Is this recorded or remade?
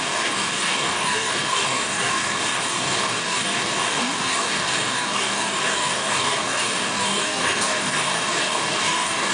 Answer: remade